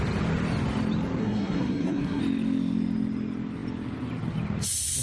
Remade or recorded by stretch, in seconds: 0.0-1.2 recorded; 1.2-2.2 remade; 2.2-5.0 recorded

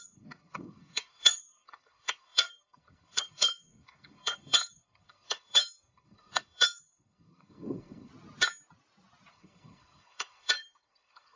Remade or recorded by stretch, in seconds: 0.0-8.1 remade; 8.1-9.3 recorded; 9.3-11.4 remade

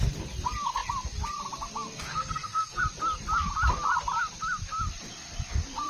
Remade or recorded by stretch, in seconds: 0.0-2.1 recorded; 2.1-2.8 remade; 2.8-5.9 recorded

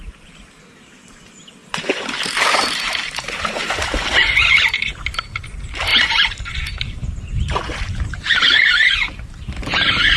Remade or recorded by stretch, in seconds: 0.0-1.6 recorded; 1.6-3.7 remade; 3.7-5.9 recorded; 5.9-10.2 remade